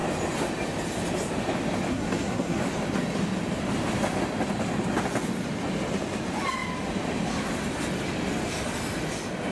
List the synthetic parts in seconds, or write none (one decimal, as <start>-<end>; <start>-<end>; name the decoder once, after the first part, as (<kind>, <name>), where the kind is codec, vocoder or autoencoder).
1.9-2.6 (codec, SNAC)